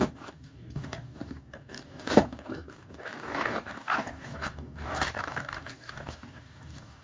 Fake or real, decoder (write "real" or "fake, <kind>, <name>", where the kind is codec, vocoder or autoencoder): fake, codec, DAC